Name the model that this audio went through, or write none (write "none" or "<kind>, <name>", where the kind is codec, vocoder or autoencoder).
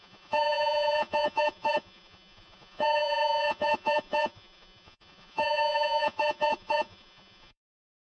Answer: vocoder, Vocos